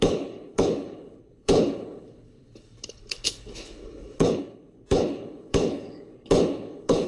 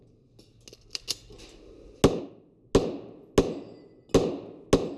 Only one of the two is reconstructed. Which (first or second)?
first